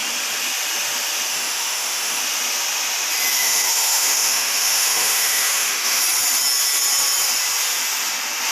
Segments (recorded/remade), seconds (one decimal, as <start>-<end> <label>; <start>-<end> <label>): 0.0-1.3 recorded; 1.3-2.2 remade; 2.2-3.3 recorded; 3.3-6.0 remade; 6.0-8.5 recorded